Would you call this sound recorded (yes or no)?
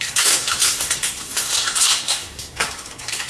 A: no